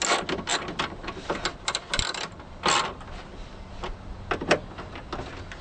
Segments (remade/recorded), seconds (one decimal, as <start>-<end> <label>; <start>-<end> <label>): 0.0-5.6 recorded